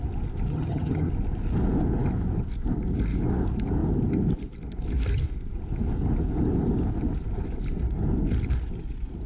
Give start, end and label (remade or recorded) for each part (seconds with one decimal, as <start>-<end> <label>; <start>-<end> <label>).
0.0-0.5 recorded; 0.5-1.1 remade; 1.1-9.3 recorded